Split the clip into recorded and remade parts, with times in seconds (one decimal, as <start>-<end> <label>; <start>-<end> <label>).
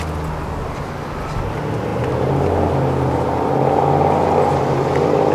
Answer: 0.0-5.3 recorded